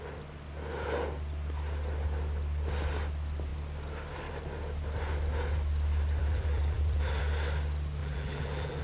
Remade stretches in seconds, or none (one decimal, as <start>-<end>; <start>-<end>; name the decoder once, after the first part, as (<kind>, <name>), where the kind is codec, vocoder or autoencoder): 6.2-7.2 (vocoder, BigVGAN v2); 8.0-8.8